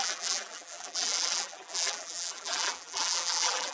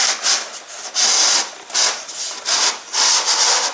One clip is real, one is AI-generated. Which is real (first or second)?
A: second